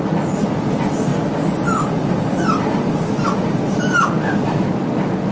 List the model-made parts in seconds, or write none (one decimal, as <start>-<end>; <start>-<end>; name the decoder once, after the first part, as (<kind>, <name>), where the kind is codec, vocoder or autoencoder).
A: none